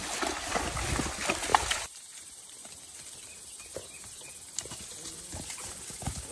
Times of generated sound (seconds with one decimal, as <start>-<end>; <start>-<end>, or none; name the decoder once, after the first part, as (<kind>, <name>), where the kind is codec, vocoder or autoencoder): 1.5-2.5 (vocoder, BigVGAN v2)